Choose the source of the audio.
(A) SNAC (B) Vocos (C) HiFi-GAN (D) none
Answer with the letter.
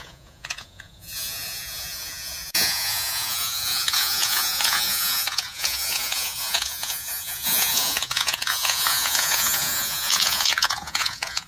B